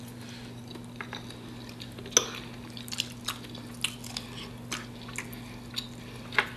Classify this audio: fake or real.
real